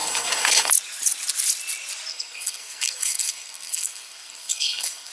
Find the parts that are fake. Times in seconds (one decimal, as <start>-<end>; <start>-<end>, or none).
0.0-0.7; 2.1-5.1